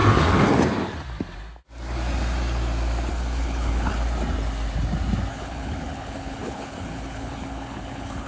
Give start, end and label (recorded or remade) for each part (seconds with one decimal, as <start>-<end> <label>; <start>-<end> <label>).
0.0-3.1 recorded; 3.1-3.9 remade; 3.9-5.3 recorded; 5.3-8.3 remade